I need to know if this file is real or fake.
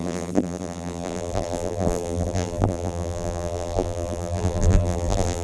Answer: fake